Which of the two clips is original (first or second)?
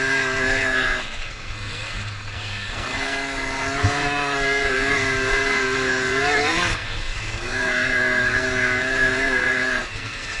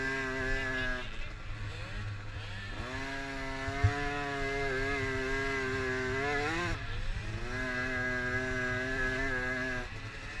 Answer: second